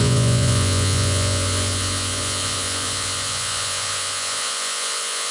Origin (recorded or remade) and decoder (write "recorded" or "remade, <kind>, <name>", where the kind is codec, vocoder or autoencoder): remade, vocoder, Vocos